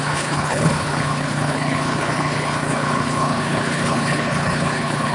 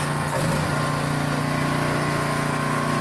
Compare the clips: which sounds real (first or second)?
second